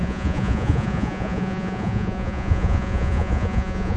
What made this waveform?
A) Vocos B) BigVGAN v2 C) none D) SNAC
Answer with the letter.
A